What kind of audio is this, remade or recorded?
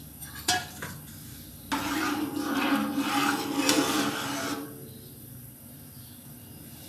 recorded